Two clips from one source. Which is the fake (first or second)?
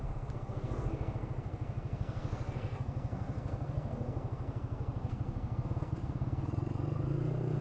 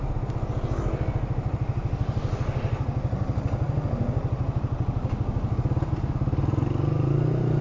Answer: first